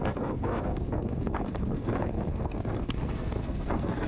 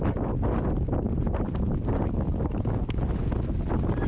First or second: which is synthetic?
first